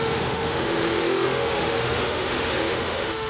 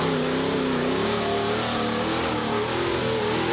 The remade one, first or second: first